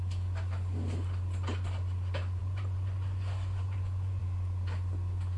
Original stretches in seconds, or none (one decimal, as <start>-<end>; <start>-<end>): 0.0-2.4; 4.2-5.4